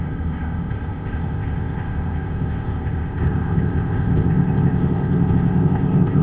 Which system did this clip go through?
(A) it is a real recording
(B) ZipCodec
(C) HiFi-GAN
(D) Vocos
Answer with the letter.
B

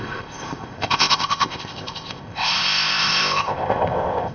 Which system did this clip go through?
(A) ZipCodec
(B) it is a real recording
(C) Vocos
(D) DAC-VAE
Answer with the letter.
A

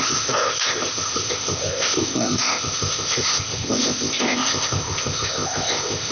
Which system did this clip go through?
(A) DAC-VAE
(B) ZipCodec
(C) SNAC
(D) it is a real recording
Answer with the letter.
B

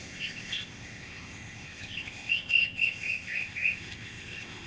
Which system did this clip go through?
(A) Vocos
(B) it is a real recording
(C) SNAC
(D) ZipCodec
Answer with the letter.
D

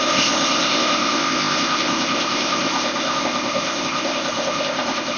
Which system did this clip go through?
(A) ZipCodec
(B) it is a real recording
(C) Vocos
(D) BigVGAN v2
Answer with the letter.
A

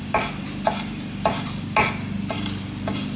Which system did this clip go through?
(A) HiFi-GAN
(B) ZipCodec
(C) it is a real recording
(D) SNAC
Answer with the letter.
C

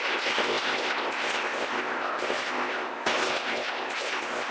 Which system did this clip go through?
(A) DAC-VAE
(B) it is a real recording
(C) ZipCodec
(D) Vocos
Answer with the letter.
C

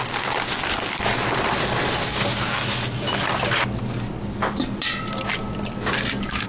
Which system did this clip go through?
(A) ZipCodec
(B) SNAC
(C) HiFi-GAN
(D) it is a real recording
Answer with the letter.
D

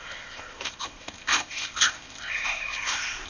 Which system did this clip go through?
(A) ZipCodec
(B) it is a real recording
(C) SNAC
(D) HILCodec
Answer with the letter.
A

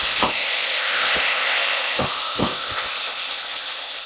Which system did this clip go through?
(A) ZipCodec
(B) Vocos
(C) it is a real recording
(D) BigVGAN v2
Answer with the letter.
A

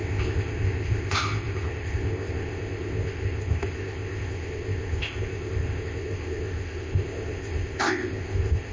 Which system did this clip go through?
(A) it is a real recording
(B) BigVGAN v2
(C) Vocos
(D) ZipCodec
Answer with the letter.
D